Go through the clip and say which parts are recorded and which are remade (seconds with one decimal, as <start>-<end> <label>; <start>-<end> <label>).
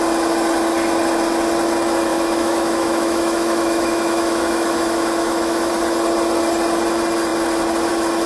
0.0-2.1 recorded; 2.1-5.7 remade; 5.7-8.3 recorded